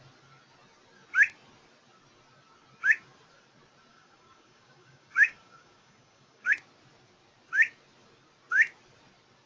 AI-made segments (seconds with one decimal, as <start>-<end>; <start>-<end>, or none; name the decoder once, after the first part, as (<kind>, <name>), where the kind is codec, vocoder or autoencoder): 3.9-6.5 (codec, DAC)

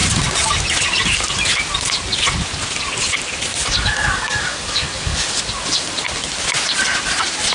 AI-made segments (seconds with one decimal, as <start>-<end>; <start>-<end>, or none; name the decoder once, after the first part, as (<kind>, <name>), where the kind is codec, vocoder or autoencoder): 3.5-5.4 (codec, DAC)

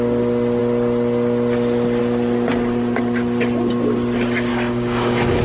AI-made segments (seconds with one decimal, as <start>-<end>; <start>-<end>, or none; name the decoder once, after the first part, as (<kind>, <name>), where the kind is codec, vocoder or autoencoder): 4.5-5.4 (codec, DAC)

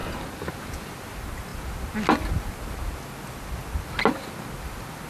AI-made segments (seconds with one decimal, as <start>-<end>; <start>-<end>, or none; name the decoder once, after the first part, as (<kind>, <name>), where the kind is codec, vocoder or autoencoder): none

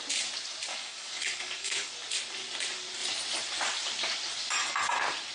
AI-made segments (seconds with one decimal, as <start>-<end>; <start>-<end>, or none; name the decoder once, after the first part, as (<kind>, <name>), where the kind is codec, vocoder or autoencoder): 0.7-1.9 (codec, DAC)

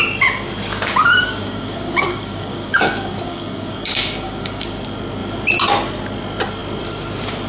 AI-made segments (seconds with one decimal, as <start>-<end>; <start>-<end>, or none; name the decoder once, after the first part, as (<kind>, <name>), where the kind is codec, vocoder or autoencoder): 0.7-4.8 (codec, DAC)

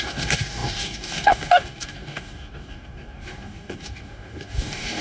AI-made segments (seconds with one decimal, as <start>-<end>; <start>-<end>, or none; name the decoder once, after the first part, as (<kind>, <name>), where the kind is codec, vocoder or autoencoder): 0.0-5.0 (codec, DAC)